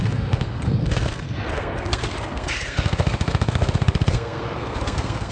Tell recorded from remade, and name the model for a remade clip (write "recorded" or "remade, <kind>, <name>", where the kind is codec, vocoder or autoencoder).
remade, codec, SNAC